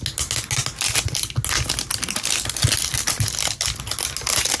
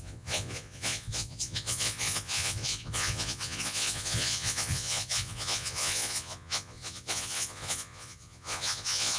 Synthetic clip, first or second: second